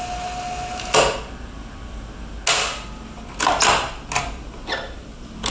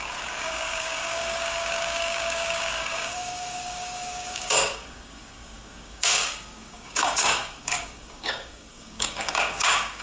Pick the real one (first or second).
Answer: first